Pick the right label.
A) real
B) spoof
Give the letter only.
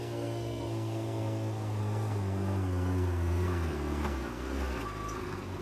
B